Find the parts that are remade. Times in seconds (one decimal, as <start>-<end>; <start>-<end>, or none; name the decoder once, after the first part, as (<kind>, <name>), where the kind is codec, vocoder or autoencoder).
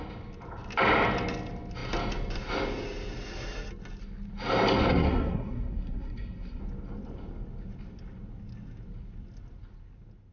4.9-6.6 (codec, SNAC)